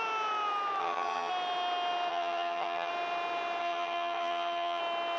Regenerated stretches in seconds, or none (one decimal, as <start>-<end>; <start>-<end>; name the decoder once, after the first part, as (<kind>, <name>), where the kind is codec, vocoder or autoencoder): 0.8-1.3 (vocoder, HiFi-GAN); 2.1-2.9; 3.6-4.8

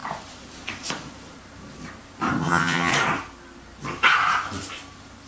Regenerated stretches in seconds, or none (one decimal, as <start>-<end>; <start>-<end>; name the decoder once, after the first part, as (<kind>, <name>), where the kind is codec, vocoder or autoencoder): 2.4-2.9 (vocoder, HiFi-GAN)

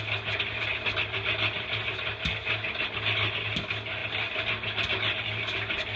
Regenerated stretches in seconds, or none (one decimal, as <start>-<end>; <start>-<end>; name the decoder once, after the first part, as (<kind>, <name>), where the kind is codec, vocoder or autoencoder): none

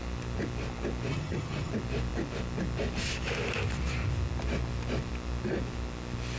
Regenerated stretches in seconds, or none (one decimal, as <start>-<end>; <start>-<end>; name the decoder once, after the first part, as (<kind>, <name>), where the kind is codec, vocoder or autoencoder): 1.1-1.7 (vocoder, HiFi-GAN)

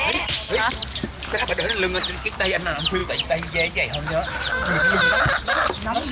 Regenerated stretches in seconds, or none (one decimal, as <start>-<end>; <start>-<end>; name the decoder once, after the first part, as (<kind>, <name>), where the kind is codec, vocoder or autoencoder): none

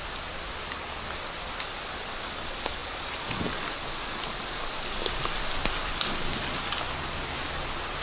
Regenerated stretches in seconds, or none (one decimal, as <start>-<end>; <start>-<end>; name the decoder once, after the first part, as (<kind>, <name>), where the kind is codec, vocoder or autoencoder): none